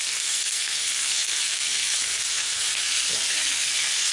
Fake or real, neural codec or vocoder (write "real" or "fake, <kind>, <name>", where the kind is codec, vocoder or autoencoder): fake, codec, SNAC